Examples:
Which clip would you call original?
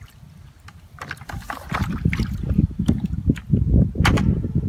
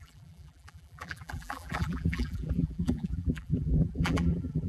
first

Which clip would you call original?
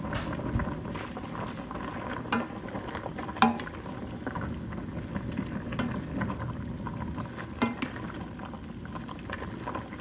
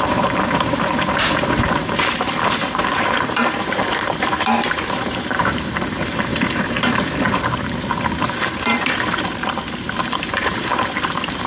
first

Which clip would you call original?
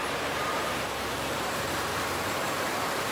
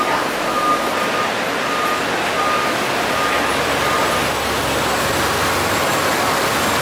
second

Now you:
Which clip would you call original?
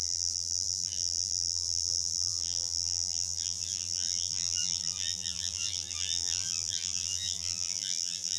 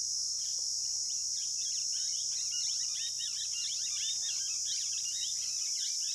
second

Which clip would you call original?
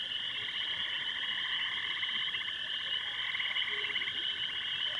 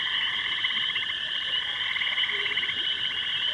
first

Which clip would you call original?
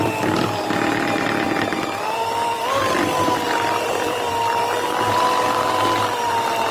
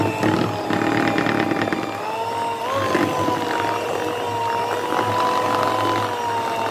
second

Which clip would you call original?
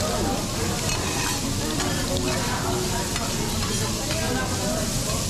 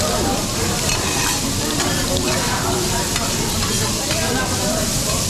first